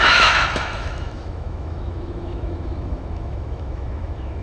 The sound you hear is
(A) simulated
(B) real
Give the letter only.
A